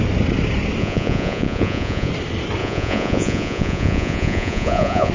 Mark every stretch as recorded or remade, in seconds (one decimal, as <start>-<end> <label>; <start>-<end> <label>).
0.0-0.8 recorded; 0.8-2.1 remade; 2.1-2.6 recorded; 2.6-5.1 remade